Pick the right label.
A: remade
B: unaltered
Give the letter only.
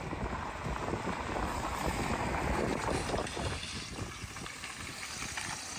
B